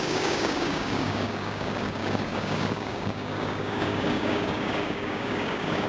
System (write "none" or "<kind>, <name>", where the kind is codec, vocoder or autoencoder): codec, DAC